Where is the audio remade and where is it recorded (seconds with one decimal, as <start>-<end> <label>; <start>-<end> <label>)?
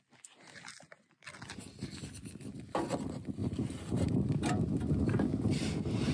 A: 0.0-3.4 recorded; 3.4-4.2 remade; 4.2-6.1 recorded